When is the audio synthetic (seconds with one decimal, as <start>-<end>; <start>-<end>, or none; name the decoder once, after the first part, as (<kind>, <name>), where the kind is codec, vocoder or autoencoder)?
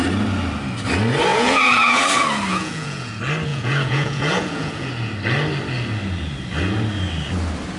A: 1.3-2.0 (vocoder, Vocos); 2.5-3.1; 3.5-4.9